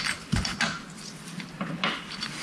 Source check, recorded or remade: recorded